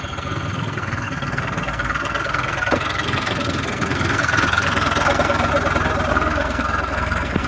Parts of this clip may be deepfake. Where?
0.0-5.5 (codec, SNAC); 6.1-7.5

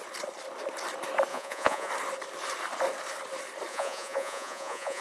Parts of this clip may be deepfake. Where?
1.3-1.9 (vocoder, Vocos); 3.7-5.0

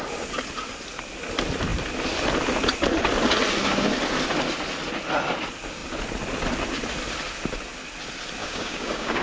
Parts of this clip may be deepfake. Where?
8.4-9.2 (codec, DAC)

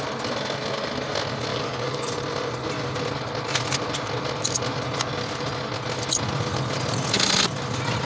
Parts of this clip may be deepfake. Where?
1.5-2.1 (codec, DAC)